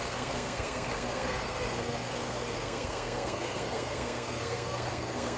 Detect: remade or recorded remade